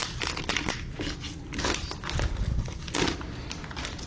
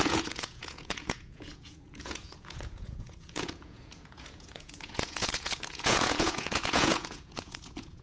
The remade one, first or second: second